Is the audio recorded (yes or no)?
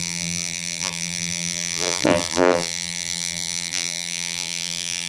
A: no